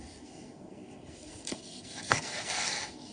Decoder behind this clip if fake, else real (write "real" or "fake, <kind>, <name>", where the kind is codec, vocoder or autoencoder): fake, codec, SNAC